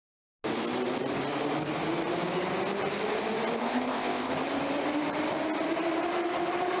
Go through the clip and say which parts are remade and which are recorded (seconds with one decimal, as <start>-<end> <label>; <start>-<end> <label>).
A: 0.0-3.6 recorded; 3.6-4.3 remade; 4.3-6.8 recorded